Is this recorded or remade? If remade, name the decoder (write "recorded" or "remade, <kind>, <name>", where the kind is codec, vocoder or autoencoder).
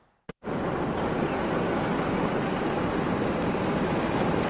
recorded